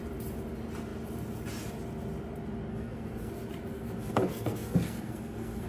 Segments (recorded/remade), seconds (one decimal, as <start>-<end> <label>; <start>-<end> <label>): 0.0-2.7 recorded; 2.7-3.3 remade; 3.3-3.7 recorded; 3.7-5.7 remade